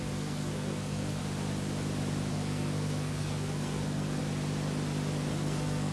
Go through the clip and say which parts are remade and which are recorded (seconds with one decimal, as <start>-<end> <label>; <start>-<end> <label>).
0.0-1.2 remade; 1.2-2.3 recorded; 2.3-4.2 remade; 4.2-5.3 recorded; 5.3-5.9 remade